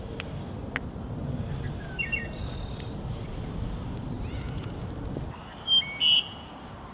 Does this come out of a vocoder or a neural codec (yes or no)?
no